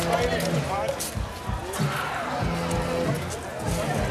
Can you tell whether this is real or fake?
real